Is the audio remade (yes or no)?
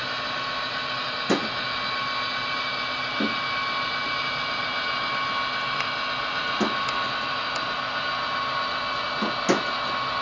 no